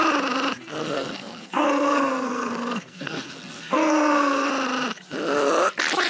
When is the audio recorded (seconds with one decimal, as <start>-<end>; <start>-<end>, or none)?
0.0-0.8; 4.5-6.1